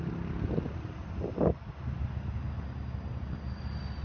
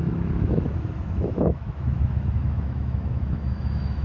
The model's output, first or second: second